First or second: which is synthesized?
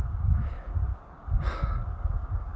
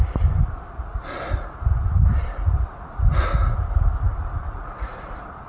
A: first